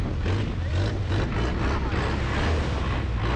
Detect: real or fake real